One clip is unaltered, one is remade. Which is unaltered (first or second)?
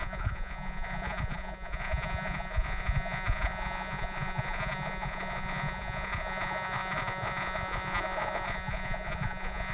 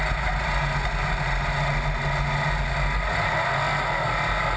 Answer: second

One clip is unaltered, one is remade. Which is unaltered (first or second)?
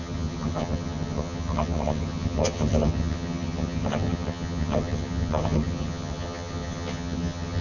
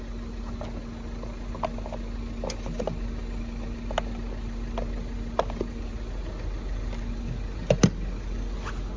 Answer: second